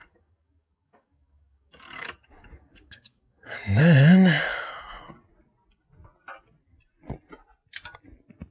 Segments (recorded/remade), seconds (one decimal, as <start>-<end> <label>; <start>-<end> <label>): 0.0-3.8 remade; 3.8-8.5 recorded